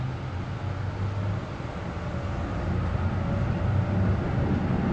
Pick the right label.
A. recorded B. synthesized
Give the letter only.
A